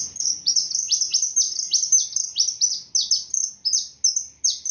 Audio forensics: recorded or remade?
recorded